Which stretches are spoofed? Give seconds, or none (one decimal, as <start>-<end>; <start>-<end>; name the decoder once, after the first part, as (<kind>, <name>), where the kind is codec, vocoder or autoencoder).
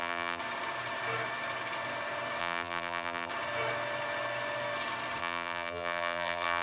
0.0-0.4 (vocoder, BigVGAN v2); 2.4-3.3; 5.2-6.6